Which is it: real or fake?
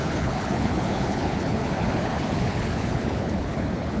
fake